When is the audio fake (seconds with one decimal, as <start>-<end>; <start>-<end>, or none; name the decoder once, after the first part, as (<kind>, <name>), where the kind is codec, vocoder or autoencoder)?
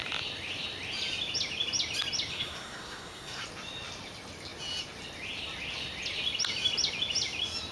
2.3-3.4 (codec, SNAC)